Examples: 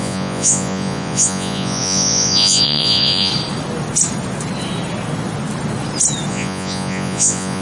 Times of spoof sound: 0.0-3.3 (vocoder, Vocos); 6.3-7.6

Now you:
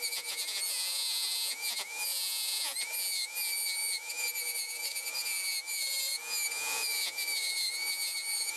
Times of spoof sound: 0.0-8.6 (vocoder, Vocos)

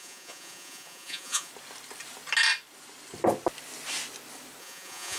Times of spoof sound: 0.0-1.5 (vocoder, Vocos); 4.6-5.2

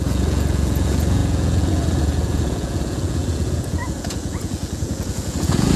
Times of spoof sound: 0.0-5.8 (vocoder, Vocos)

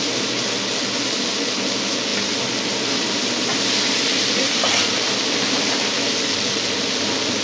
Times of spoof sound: none

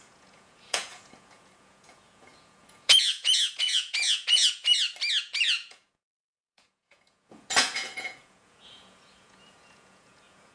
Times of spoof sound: 0.0-4.6 (vocoder, Vocos); 5.2-10.5

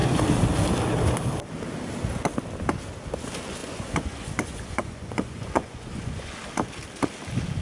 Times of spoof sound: 3.6-6.3 (vocoder, Vocos)